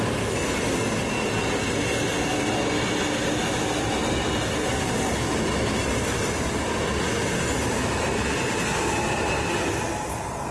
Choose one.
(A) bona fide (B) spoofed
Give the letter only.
A